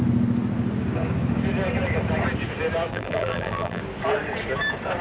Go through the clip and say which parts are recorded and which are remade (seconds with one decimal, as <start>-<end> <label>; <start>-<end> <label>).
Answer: 0.0-2.9 recorded; 2.9-3.8 remade; 3.8-5.0 recorded

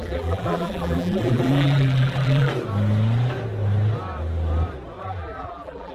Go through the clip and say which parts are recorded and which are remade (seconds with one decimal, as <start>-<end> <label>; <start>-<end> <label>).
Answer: 0.0-2.5 remade; 2.5-5.0 recorded; 5.0-5.9 remade

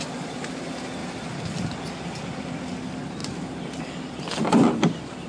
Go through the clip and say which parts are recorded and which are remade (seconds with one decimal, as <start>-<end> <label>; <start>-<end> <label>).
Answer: 0.0-5.3 recorded

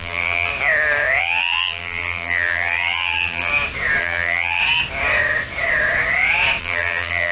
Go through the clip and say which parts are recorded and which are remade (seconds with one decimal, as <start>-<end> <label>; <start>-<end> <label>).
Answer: 0.0-0.5 remade; 0.5-1.2 recorded; 1.2-3.5 remade; 3.5-4.0 recorded; 4.0-4.6 remade; 4.6-6.6 recorded; 6.6-7.3 remade

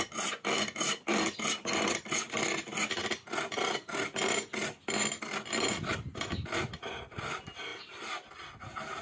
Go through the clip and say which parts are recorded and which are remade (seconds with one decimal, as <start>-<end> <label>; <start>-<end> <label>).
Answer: 0.0-9.0 recorded

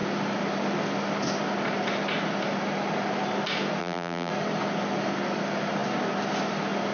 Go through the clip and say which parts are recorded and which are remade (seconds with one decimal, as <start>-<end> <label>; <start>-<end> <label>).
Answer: 0.0-3.8 recorded; 3.8-4.3 remade; 4.3-6.9 recorded

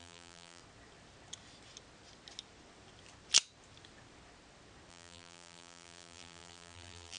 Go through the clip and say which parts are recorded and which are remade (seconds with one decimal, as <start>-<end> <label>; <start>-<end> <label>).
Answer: 0.0-0.6 remade; 0.6-4.9 recorded; 4.9-7.2 remade